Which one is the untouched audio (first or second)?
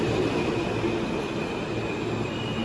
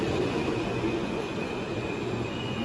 first